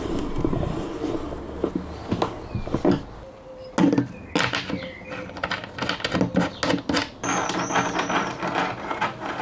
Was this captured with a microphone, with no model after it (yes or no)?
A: yes